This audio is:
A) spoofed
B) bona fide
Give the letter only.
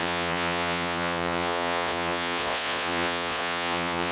A